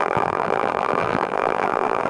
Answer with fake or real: fake